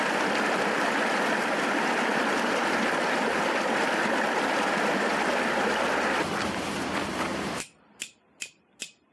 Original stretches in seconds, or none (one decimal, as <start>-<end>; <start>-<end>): 5.1-5.6